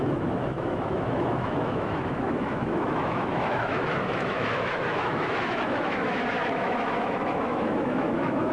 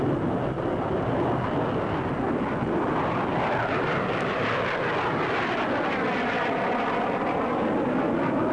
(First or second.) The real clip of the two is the second